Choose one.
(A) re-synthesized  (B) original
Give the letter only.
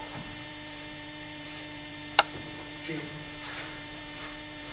A